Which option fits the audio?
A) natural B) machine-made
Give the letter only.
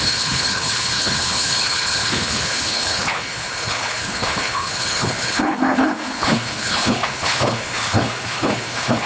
B